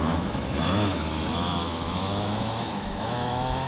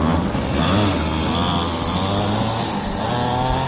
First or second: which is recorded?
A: second